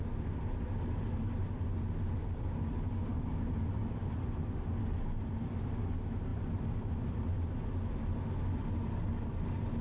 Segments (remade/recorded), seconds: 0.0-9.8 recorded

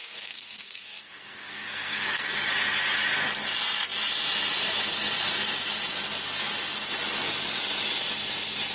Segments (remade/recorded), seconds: 0.0-2.5 remade; 2.5-8.7 recorded

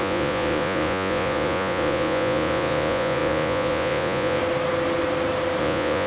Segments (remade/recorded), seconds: 0.0-4.4 remade; 4.4-5.6 recorded; 5.6-6.1 remade

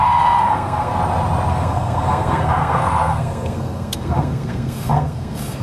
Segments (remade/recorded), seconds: 0.0-0.9 remade; 0.9-1.5 recorded; 1.5-5.6 remade

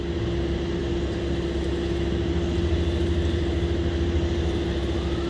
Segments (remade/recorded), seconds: 0.0-5.3 recorded

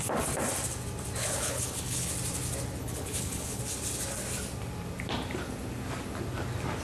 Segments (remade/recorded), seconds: 0.0-1.2 recorded; 1.2-2.1 remade; 2.1-2.8 recorded; 2.8-3.6 remade; 3.6-6.8 recorded

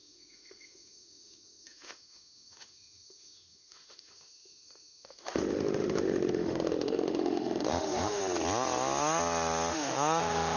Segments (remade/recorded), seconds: 0.0-8.2 remade; 8.2-9.7 recorded; 9.7-10.6 remade